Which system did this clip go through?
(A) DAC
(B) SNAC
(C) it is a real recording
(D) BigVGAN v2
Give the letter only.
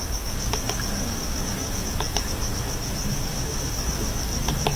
A